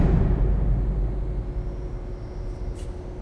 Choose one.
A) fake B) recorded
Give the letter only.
B